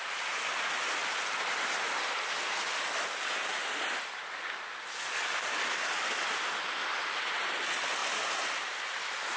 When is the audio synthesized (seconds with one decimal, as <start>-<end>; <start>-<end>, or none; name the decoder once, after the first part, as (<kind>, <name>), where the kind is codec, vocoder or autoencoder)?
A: none

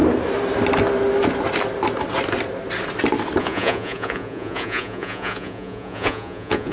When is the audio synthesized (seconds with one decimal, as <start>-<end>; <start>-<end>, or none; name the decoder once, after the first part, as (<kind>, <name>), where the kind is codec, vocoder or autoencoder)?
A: 3.4-6.7 (vocoder, Vocos)

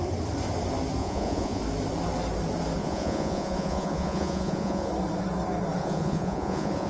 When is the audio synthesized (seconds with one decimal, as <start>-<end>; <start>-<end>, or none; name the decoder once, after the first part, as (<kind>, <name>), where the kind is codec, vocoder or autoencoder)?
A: 1.0-1.6 (vocoder, Vocos); 2.8-4.9; 5.8-6.9